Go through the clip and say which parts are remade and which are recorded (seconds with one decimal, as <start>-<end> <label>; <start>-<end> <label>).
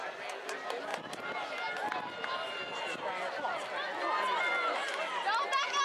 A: 0.0-5.8 recorded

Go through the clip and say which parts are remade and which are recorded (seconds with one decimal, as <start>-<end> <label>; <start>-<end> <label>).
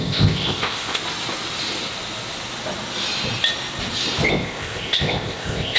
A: 0.0-1.0 remade; 1.0-4.3 recorded; 4.3-5.8 remade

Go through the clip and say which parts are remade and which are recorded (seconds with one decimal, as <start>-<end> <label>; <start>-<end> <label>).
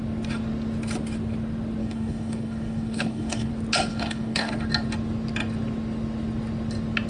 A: 0.0-1.8 recorded; 1.8-3.5 remade; 3.5-3.9 recorded; 3.9-4.5 remade; 4.5-7.1 recorded